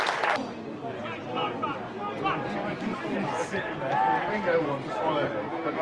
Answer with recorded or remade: recorded